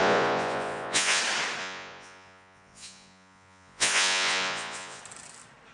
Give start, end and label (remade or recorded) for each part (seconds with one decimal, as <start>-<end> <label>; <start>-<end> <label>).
0.0-1.2 remade; 1.2-1.6 recorded; 1.6-5.0 remade; 5.0-5.7 recorded